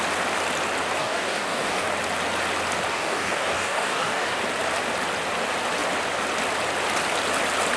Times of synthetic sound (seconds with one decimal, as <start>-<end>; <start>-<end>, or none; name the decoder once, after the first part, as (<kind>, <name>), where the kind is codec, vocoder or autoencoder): 1.0-1.9 (codec, DAC); 2.9-4.4